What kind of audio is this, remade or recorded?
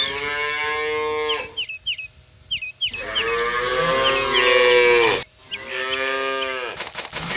recorded